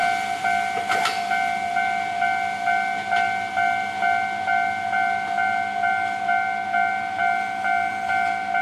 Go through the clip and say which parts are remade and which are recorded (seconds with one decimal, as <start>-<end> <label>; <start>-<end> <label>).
0.0-8.6 recorded